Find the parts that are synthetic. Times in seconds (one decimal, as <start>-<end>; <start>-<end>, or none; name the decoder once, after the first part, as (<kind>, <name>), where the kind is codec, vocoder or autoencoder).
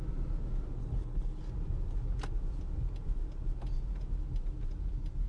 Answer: 0.8-1.4 (codec, HILCodec)